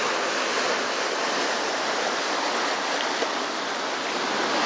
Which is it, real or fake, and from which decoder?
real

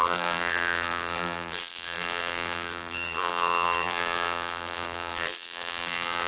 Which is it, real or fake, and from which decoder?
fake, vocoder, BigVGAN v2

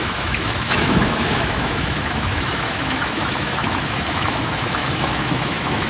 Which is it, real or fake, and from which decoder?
fake, autoencoder, DAC-VAE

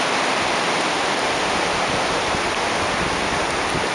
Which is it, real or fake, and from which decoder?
real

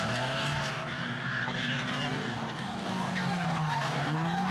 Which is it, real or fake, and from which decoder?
fake, codec, DAC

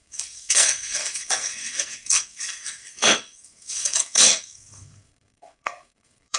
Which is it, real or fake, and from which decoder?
fake, codec, SNAC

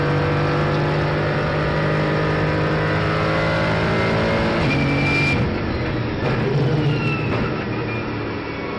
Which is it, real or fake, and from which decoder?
real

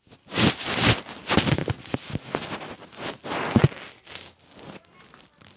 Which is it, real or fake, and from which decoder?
real